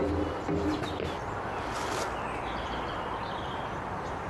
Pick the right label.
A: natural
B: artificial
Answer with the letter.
A